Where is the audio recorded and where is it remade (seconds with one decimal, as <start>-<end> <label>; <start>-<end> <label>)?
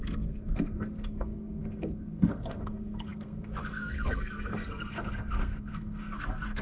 0.0-6.6 remade